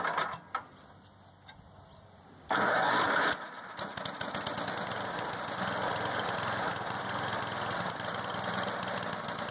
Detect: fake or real real